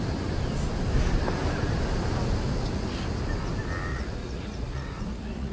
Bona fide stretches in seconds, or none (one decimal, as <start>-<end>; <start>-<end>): 0.0-3.9